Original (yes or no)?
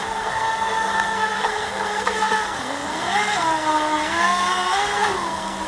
no